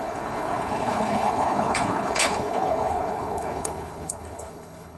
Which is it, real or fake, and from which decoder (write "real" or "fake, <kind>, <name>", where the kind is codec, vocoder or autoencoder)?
fake, codec, HILCodec